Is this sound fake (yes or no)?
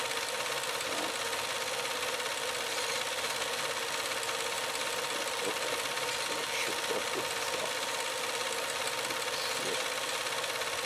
no